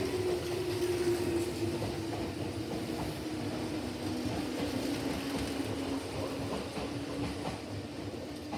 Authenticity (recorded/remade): recorded